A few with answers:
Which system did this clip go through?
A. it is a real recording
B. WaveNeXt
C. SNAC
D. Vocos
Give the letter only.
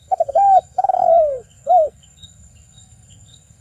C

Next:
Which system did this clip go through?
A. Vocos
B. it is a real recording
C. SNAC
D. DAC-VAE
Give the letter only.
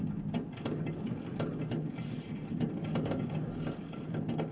B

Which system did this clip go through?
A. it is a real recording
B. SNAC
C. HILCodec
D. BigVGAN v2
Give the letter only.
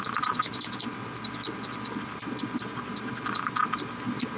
A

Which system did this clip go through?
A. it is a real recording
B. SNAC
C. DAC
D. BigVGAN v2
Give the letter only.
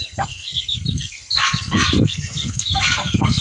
B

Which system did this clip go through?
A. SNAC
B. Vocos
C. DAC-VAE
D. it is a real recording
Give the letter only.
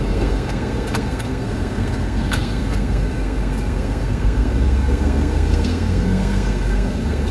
A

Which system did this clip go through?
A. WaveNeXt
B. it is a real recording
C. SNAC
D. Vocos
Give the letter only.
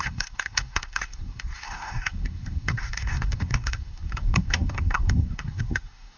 C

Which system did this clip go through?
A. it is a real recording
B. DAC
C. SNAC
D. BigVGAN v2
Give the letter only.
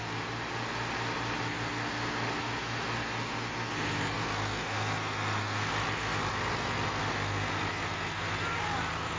A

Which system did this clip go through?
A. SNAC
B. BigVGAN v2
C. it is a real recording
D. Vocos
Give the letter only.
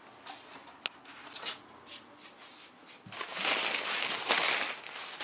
C